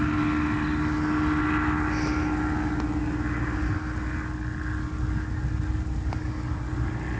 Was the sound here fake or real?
real